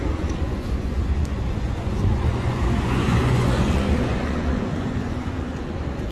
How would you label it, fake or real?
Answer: fake